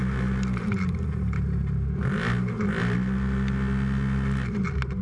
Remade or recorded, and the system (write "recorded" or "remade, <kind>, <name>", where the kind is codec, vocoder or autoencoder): recorded